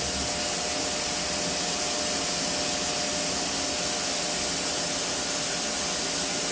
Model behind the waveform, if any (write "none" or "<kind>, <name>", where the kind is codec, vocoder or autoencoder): none